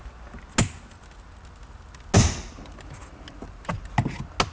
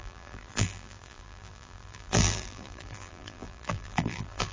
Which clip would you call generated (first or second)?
second